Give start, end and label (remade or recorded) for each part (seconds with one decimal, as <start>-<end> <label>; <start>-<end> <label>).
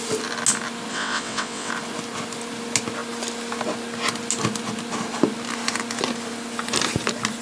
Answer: 0.0-0.9 recorded; 0.9-1.7 remade; 1.7-7.4 recorded